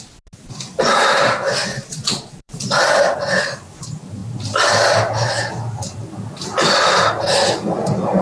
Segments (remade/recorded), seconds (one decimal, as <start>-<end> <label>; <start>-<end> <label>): 0.0-1.7 recorded; 1.7-2.6 remade; 2.6-8.2 recorded